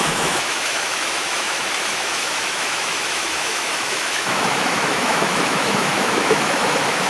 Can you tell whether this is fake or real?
fake